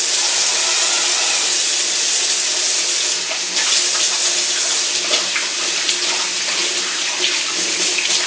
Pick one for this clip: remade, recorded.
recorded